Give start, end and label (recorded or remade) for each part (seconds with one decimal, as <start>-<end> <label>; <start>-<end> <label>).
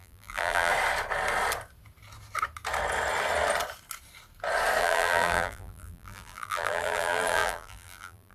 0.0-0.7 remade; 0.7-4.8 recorded; 4.8-8.3 remade